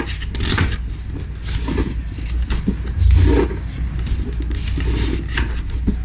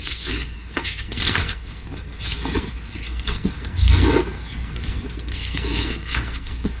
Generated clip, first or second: second